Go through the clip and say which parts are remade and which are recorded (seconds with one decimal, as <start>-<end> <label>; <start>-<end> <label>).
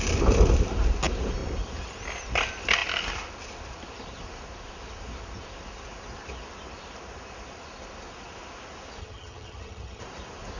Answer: 0.0-9.0 recorded; 9.0-10.0 remade; 10.0-10.6 recorded